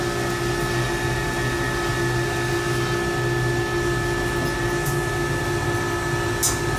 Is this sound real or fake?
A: real